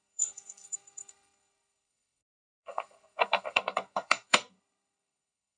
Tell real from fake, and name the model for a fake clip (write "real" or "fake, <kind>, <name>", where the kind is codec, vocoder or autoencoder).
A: fake, codec, SNAC